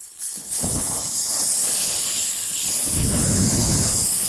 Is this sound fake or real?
fake